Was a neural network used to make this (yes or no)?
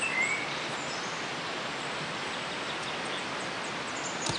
no